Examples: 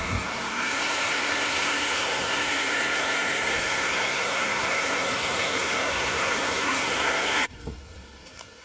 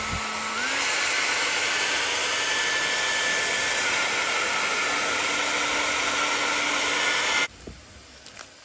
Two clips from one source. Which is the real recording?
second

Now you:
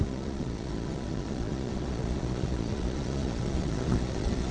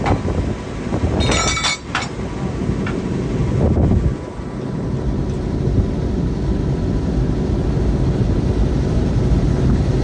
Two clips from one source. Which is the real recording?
second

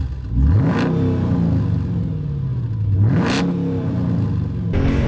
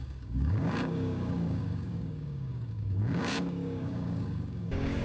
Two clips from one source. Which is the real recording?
first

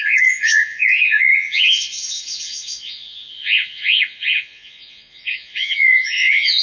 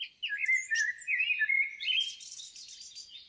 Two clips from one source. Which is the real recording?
second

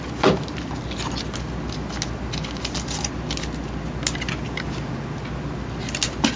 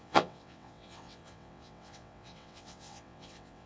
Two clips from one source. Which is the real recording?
first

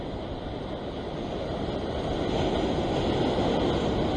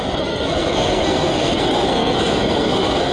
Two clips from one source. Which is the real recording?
first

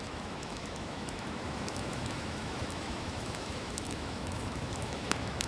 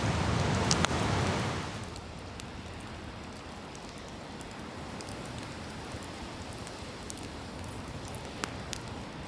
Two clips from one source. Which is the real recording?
second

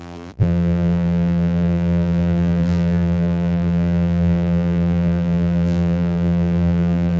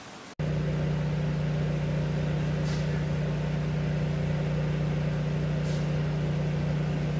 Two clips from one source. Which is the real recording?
second